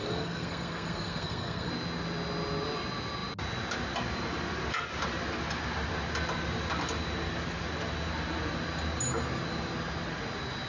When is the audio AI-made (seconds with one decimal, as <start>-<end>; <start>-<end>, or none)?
0.0-1.7

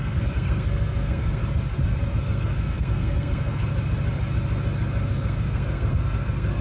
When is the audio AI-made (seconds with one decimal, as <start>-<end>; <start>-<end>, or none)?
0.0-1.4; 2.1-3.6; 5.1-6.6

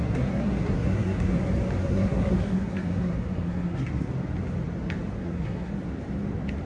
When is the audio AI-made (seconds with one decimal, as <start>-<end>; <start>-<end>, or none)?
0.0-1.4; 1.8-4.1; 5.2-5.7

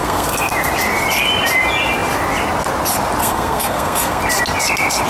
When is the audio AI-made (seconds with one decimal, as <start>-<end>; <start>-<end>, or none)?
0.0-0.5; 3.2-4.2

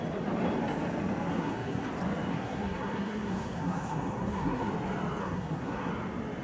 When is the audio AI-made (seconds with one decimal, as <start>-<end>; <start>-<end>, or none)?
1.3-1.9; 2.3-4.7; 5.2-5.9